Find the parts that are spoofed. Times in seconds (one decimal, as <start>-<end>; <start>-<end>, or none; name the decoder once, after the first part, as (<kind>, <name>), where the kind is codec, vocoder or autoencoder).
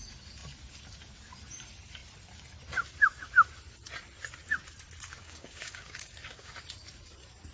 5.2-6.5 (codec, DAC)